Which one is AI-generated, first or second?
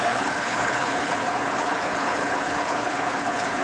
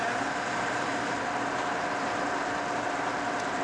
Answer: first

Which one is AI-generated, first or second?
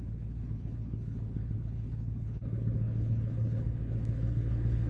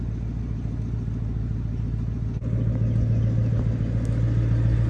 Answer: first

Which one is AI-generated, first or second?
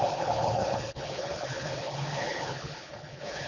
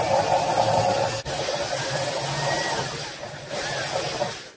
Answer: first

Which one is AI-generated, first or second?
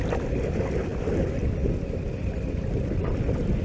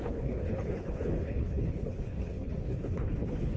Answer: second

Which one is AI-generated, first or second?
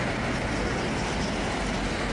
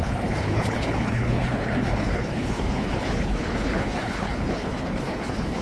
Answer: second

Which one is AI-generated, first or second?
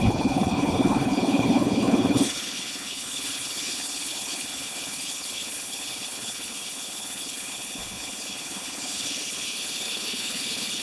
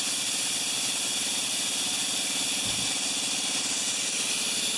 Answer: first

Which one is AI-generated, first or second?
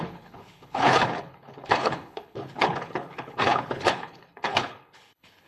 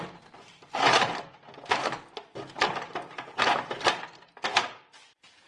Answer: first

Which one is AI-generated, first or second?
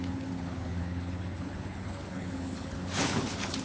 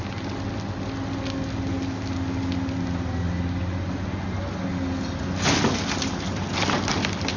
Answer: first